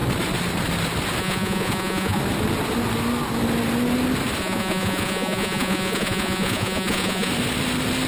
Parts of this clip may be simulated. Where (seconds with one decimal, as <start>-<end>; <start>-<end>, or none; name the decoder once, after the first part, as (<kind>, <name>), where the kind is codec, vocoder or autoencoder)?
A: 1.2-2.2 (vocoder, Vocos); 4.4-7.3